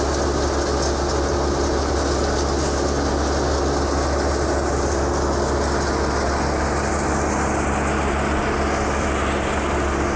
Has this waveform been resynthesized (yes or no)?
no